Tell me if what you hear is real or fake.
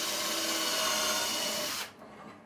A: real